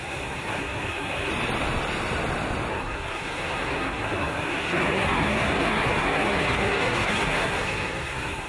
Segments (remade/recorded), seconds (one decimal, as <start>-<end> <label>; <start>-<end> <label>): 0.0-1.3 remade; 1.3-2.7 recorded; 2.7-8.5 remade